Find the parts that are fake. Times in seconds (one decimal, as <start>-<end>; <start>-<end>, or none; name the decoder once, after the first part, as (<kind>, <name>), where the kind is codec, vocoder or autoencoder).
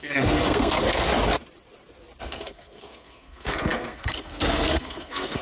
0.0-1.1 (codec, SNAC); 2.2-5.4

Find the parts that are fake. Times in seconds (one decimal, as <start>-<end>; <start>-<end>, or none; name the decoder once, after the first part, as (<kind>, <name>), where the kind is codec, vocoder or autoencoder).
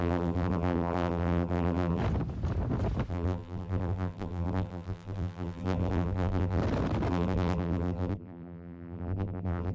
0.0-2.0 (vocoder, BigVGAN v2); 3.1-6.6; 7.1-9.7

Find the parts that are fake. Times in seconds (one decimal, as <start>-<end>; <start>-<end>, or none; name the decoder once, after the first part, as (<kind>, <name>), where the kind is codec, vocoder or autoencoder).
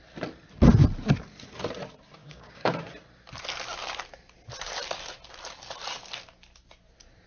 2.2-2.7 (codec, DAC)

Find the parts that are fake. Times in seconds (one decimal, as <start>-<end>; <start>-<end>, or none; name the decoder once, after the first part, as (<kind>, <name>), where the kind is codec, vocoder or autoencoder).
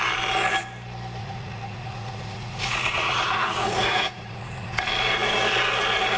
1.2-4.9 (vocoder, Vocos)